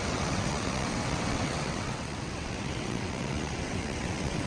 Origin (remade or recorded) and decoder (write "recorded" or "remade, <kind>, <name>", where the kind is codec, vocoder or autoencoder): remade, vocoder, WaveNeXt